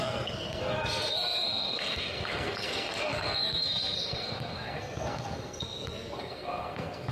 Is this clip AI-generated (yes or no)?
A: yes